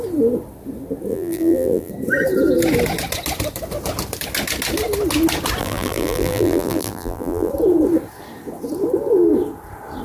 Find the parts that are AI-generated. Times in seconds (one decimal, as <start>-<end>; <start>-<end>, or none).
1.1-1.9; 5.6-7.5